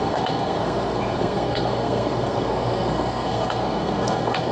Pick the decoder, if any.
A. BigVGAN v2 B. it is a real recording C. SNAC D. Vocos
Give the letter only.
C